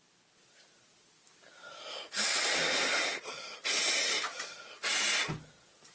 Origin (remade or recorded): recorded